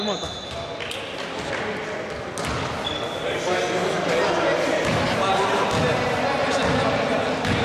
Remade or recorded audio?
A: recorded